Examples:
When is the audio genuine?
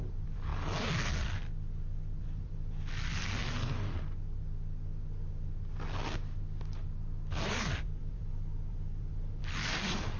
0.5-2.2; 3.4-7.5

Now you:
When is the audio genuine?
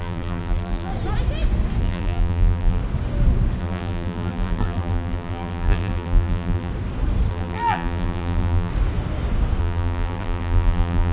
0.9-1.8; 2.8-3.6; 6.7-7.3; 8.7-9.6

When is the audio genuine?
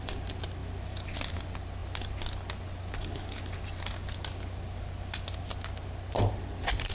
0.6-1.4; 1.8-5.4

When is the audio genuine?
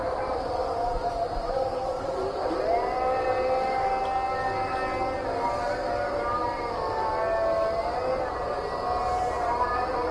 0.0-0.6; 2.6-9.0